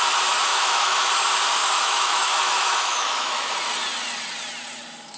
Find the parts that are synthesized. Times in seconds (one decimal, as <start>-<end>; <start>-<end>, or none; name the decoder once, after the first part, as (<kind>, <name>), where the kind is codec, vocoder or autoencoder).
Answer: 0.5-1.1 (autoencoder, DAC-VAE); 1.6-3.5